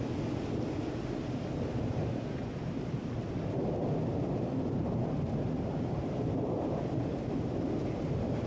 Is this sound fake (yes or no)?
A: no